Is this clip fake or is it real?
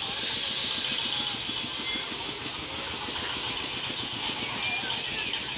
real